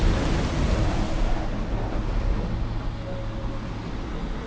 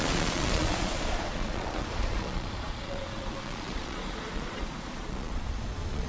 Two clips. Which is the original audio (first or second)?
first